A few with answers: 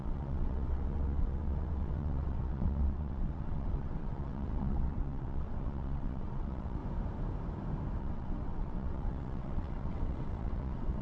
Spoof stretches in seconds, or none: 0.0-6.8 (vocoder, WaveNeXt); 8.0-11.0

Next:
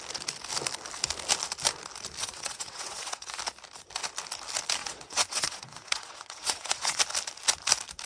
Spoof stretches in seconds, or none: 2.2-3.4 (vocoder, WaveNeXt); 4.8-7.0

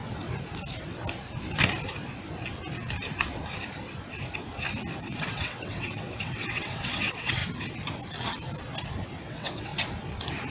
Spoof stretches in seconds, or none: 5.0-7.4 (vocoder, WaveNeXt); 9.2-9.7